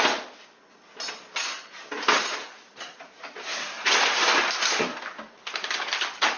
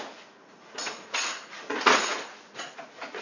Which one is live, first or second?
first